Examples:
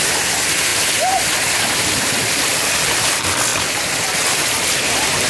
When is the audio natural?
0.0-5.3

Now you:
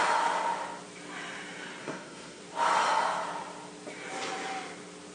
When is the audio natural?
0.0-1.8; 2.4-5.1

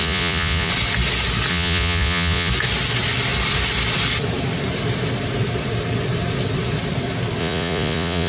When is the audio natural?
0.7-1.5; 2.5-7.4

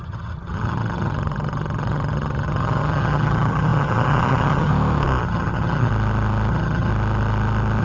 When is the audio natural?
4.7-5.2; 5.9-6.5; 6.9-7.8

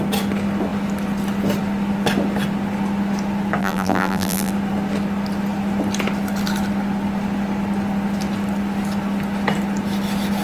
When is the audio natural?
0.0-3.6; 4.5-10.4

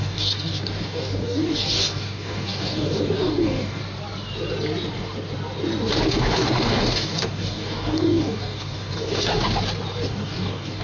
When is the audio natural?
3.8-6.1; 9.3-10.1